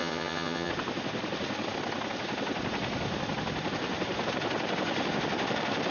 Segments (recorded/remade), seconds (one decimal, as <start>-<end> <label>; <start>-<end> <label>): 0.0-0.7 remade; 0.7-5.9 recorded